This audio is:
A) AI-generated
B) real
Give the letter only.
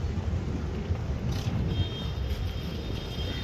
B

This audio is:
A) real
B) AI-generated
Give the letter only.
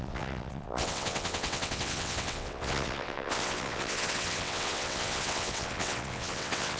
B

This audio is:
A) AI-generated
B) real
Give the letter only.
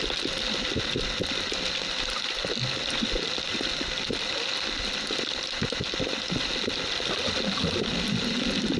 B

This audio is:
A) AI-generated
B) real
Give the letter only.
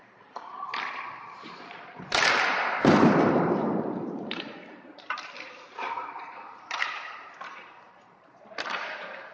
A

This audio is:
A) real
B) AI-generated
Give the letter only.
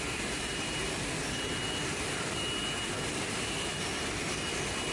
B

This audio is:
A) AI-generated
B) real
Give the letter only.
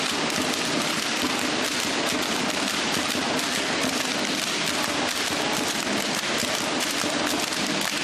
B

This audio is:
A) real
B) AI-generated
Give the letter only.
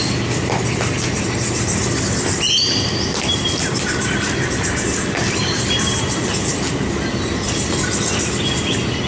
A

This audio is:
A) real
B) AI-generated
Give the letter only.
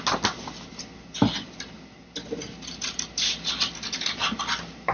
A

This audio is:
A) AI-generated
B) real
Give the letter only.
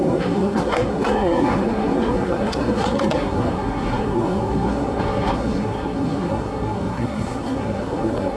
A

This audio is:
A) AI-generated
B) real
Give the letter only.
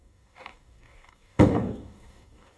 A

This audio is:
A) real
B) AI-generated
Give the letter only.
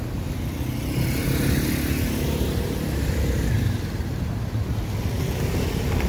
A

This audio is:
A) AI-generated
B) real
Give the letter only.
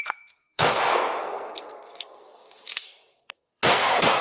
A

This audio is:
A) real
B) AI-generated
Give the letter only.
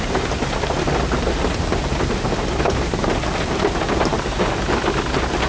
A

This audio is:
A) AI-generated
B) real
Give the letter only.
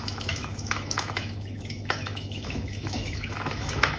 A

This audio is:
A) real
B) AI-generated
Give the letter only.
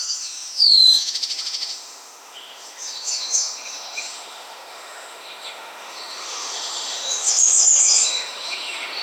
B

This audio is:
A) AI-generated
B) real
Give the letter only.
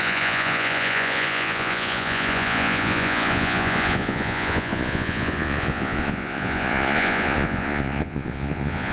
A